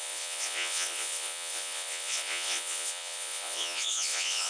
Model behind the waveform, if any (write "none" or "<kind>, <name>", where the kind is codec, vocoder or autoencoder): vocoder, Vocos